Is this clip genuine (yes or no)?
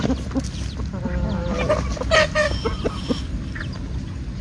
yes